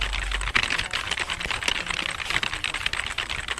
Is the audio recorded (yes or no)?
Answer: yes